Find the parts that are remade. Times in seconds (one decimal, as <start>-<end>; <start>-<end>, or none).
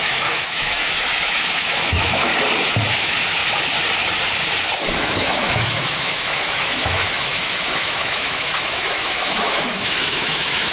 0.0-2.3; 2.9-3.4; 5.0-10.7